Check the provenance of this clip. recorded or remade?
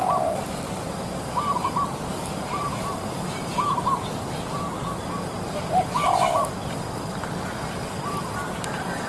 recorded